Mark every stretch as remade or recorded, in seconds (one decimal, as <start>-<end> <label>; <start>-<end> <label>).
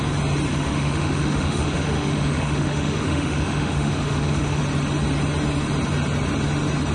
0.0-0.5 recorded; 0.5-4.6 remade; 4.6-6.9 recorded